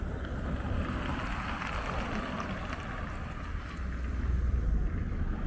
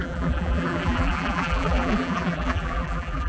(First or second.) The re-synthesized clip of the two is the second